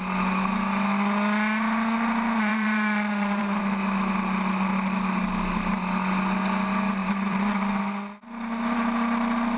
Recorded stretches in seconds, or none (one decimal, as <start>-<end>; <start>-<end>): 0.0-2.5; 3.6-7.0; 7.8-9.6